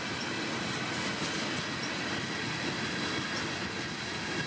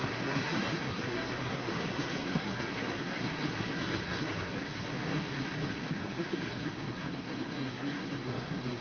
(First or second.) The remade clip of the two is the second